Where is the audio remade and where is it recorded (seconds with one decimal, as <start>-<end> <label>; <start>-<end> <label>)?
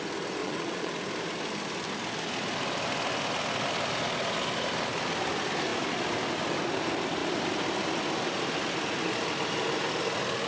0.0-0.4 recorded; 0.4-0.9 remade; 0.9-10.5 recorded